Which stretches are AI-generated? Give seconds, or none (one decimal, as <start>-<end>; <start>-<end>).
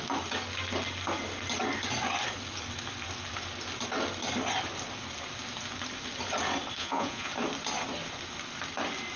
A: 6.8-7.3